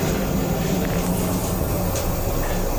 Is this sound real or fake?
real